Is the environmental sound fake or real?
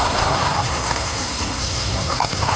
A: fake